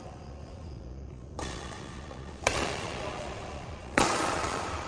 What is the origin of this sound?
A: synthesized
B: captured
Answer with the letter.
A